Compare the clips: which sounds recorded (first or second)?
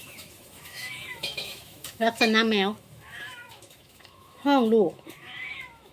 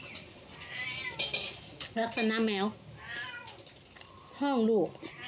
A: second